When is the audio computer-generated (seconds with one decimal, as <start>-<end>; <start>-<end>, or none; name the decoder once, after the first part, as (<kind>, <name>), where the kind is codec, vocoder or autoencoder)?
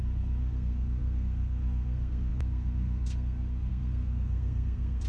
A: 0.0-5.1 (codec, SNAC)